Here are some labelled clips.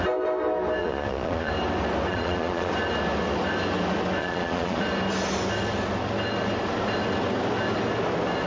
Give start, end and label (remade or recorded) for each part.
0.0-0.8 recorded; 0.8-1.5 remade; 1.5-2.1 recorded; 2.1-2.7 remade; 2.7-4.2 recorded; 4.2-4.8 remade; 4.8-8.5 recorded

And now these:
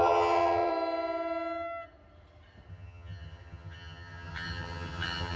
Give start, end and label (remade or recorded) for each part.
0.0-0.7 remade; 0.7-2.7 recorded; 2.7-5.4 remade

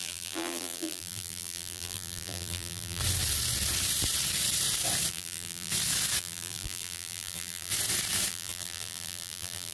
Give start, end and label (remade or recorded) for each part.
0.0-3.0 remade; 3.0-5.1 recorded; 5.1-5.7 remade; 5.7-6.2 recorded; 6.2-7.7 remade; 7.7-8.3 recorded; 8.3-9.7 remade

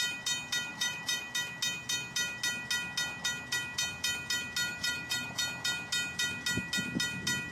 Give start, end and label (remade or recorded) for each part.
0.0-0.7 recorded; 0.7-1.2 remade; 1.2-4.7 recorded; 4.7-5.4 remade; 5.4-7.5 recorded